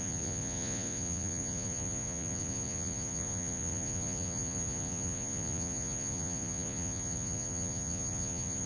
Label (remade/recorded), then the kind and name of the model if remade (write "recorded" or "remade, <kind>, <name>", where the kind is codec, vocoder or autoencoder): remade, vocoder, Vocos